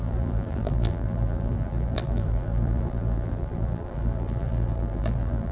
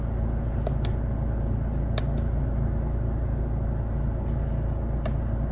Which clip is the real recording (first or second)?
second